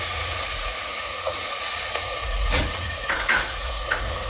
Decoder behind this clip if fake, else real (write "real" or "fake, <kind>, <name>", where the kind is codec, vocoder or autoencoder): fake, vocoder, Vocos